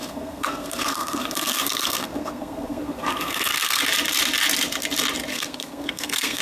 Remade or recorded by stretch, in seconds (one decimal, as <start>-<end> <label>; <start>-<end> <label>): 0.0-3.8 remade; 3.8-5.3 recorded; 5.3-6.4 remade